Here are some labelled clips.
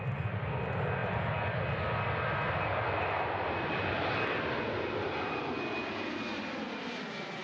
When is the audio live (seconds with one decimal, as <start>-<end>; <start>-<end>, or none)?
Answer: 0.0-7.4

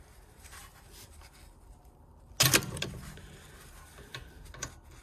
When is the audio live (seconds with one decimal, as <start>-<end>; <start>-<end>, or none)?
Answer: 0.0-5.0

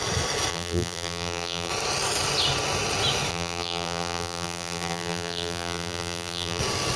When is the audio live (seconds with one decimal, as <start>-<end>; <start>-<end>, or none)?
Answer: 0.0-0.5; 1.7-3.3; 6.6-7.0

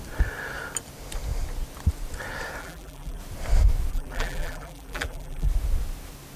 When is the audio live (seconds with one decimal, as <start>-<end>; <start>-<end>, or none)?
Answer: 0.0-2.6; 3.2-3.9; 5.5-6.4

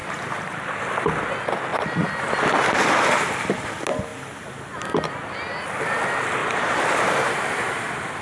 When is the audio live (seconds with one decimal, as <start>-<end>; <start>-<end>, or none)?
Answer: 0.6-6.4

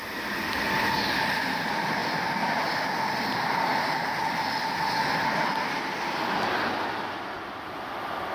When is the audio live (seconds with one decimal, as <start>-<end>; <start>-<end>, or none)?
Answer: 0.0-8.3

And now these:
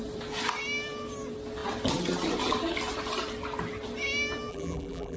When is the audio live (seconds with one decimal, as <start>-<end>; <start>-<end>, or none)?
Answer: 0.0-4.5

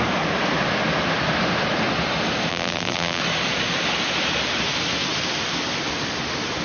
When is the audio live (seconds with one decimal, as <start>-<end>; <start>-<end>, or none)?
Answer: 0.0-2.5; 3.2-6.6